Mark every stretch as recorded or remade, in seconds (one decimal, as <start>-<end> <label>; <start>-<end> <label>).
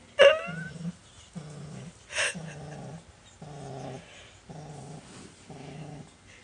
0.0-6.4 recorded